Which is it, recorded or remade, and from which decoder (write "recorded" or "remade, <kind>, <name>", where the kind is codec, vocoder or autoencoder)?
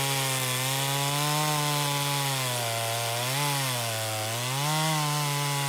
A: recorded